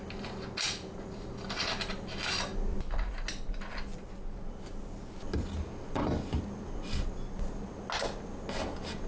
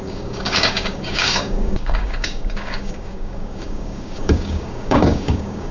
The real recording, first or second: first